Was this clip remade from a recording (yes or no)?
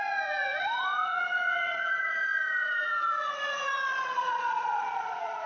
yes